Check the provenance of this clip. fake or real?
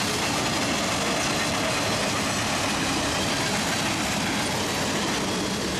real